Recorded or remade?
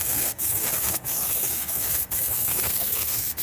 remade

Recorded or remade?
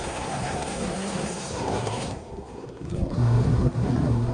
remade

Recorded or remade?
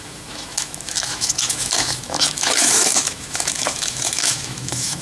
remade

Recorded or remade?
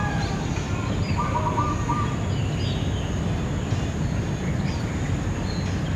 recorded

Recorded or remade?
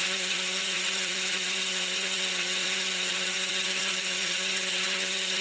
remade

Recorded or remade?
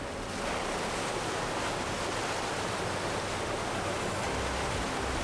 recorded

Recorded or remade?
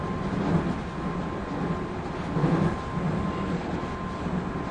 recorded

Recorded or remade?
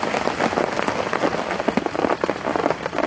recorded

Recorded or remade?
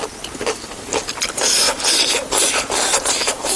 recorded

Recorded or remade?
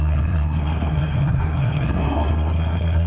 remade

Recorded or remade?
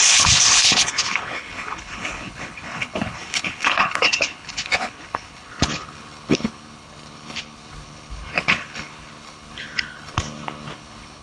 remade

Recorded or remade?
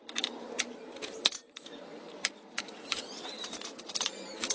remade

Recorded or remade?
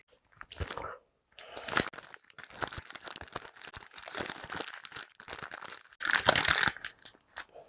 recorded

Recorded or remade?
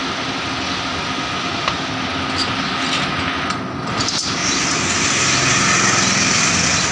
recorded